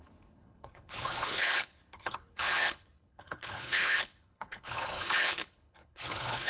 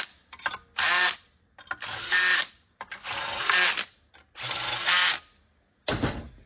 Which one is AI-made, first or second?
first